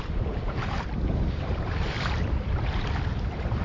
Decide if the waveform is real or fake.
fake